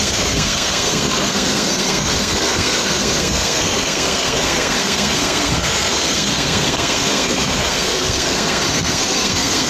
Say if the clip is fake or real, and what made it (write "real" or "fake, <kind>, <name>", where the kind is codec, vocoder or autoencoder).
fake, codec, SNAC